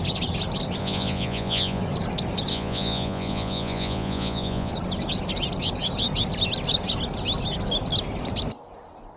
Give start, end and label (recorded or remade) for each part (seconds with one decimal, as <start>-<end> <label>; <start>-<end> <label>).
0.0-0.8 recorded; 0.8-1.8 remade; 1.8-2.5 recorded; 2.5-4.7 remade; 4.7-9.2 recorded